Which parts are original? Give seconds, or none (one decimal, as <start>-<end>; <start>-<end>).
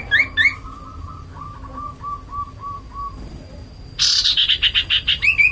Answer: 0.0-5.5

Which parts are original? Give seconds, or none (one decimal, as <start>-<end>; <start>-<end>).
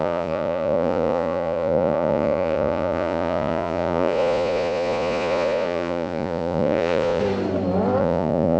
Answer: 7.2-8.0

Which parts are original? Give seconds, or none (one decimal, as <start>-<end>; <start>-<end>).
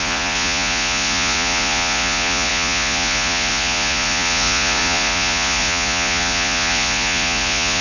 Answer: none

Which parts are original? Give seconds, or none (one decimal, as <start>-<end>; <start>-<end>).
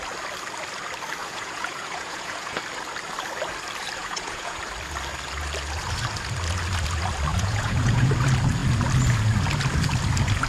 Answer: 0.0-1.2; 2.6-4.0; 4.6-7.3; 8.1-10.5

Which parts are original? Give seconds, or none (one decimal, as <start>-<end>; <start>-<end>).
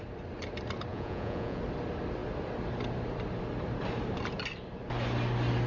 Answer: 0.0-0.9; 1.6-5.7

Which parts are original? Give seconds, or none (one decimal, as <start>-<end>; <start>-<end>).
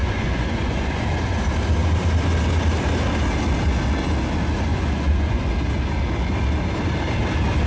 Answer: 1.0-4.7; 5.5-7.7